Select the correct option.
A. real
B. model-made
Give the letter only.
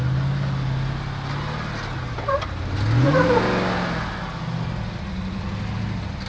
A